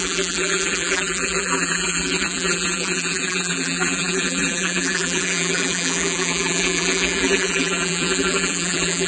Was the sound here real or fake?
fake